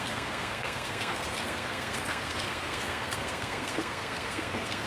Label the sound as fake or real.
fake